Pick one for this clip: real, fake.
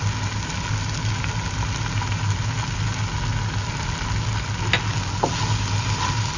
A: real